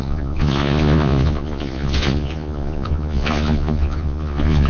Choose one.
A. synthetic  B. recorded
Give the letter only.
A